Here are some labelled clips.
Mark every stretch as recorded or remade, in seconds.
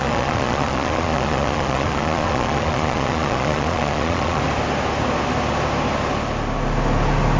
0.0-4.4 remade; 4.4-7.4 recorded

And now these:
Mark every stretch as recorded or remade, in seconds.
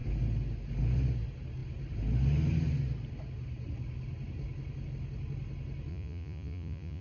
0.0-5.9 recorded; 5.9-7.0 remade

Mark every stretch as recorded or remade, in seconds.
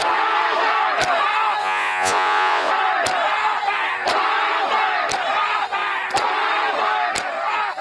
0.0-1.6 recorded; 1.6-2.7 remade; 2.7-7.8 recorded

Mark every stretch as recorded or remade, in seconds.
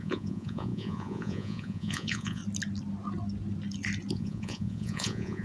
0.0-2.4 remade; 2.4-4.1 recorded; 4.1-5.4 remade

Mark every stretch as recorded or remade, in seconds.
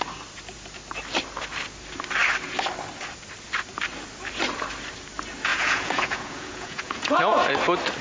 0.0-5.5 recorded; 5.5-7.5 remade; 7.5-8.0 recorded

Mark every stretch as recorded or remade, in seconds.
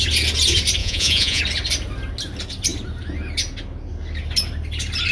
0.0-0.8 recorded; 0.8-1.4 remade; 1.4-5.1 recorded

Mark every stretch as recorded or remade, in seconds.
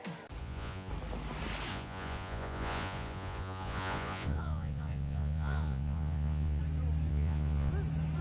0.0-0.4 recorded; 0.4-0.9 remade; 0.9-1.7 recorded; 1.7-6.6 remade; 6.6-7.1 recorded; 7.1-7.7 remade; 7.7-8.2 recorded